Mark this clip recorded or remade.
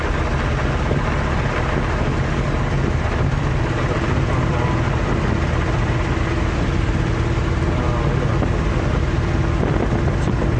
recorded